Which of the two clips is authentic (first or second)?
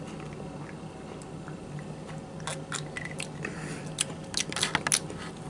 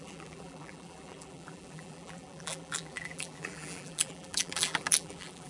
first